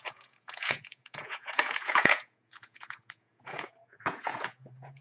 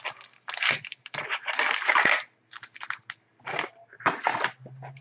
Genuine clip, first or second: second